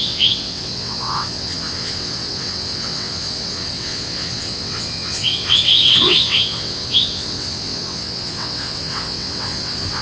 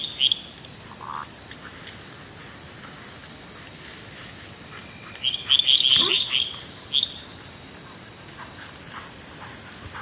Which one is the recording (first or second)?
second